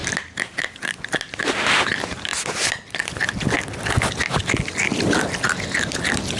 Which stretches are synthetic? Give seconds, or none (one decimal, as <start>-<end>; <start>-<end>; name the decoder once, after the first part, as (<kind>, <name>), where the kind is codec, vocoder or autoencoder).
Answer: none